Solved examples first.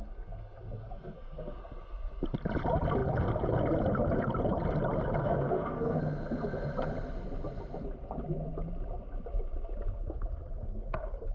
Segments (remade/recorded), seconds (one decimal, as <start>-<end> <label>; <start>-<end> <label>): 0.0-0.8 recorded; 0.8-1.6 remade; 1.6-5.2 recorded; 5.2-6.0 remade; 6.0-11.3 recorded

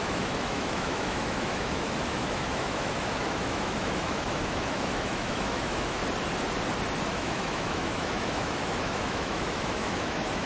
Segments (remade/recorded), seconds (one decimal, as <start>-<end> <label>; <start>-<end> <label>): 0.0-6.0 remade; 6.0-7.1 recorded; 7.1-10.5 remade

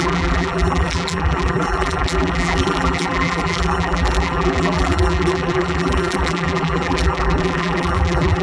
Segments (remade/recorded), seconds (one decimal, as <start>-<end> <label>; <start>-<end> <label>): 0.0-8.4 remade

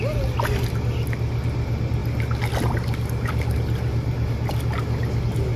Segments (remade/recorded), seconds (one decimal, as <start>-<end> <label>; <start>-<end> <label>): 0.0-5.6 recorded

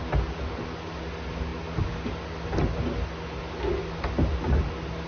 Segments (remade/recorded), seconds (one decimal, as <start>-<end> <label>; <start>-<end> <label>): 0.0-5.1 recorded

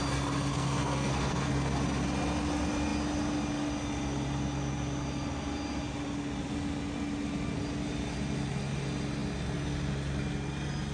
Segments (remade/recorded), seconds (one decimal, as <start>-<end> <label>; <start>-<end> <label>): 0.0-0.5 recorded; 0.5-1.5 remade; 1.5-10.9 recorded

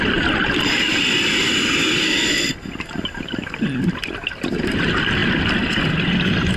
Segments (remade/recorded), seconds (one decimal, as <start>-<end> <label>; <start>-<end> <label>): 0.0-6.6 recorded